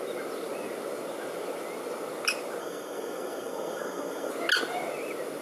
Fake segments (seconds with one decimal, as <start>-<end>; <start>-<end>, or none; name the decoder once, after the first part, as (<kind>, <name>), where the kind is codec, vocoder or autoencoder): 2.6-4.3 (codec, SNAC)